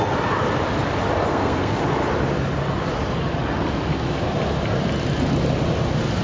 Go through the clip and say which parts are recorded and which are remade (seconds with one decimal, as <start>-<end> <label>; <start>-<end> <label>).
0.0-1.3 recorded; 1.3-1.8 remade; 1.8-6.2 recorded